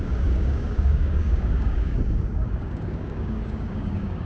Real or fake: fake